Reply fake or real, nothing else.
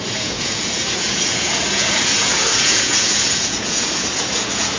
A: fake